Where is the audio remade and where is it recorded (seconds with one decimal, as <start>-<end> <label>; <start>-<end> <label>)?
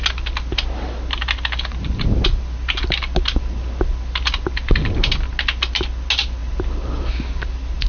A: 0.0-7.9 recorded